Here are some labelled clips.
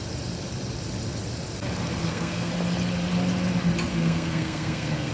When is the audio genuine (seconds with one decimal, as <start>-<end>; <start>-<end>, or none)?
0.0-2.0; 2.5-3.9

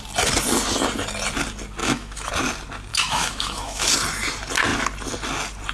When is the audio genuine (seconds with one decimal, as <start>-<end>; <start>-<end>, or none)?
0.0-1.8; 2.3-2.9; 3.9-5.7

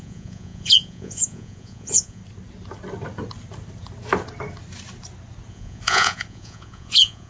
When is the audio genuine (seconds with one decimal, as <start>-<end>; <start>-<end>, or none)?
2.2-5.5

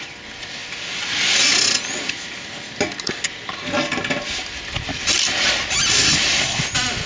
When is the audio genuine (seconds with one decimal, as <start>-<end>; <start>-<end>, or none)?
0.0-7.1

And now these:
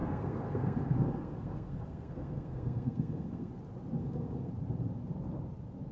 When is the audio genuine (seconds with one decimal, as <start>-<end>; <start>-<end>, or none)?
3.5-4.0; 4.5-5.9

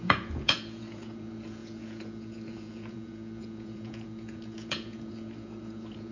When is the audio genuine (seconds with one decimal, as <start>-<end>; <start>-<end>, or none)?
none